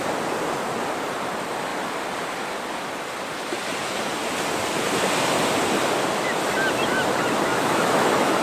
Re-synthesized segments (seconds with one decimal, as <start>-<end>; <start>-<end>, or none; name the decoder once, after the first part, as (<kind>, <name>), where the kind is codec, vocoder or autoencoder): 7.5-8.4 (autoencoder, DAC-VAE)

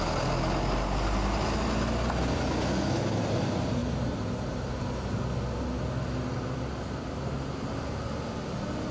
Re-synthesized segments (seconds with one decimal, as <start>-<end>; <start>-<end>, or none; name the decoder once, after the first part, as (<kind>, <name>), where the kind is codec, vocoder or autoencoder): none